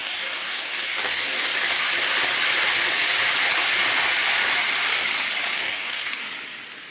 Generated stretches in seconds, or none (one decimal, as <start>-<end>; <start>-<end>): 0.0-1.5; 5.5-6.2